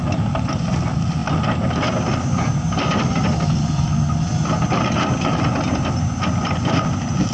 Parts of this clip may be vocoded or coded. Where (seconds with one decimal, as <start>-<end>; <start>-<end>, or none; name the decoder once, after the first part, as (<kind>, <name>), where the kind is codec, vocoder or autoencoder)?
none